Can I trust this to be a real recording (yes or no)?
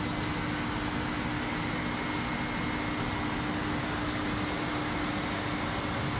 yes